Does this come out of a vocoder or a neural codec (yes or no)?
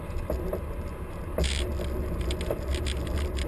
no